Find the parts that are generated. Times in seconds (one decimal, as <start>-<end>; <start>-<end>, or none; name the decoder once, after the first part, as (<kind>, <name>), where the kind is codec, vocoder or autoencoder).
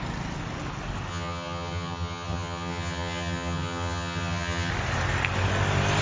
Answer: 1.1-4.7 (vocoder, HiFi-GAN)